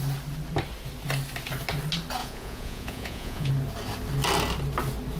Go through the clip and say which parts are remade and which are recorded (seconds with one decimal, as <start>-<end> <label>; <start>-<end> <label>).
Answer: 0.0-2.2 recorded; 2.2-3.5 remade; 3.5-5.2 recorded